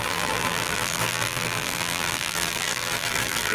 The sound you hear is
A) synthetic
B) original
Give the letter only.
A